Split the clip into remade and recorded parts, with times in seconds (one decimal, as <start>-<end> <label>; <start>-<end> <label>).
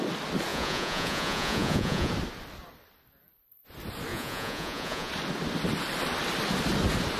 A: 0.0-0.5 recorded; 0.5-2.1 remade; 2.1-4.1 recorded; 4.1-5.1 remade; 5.1-7.2 recorded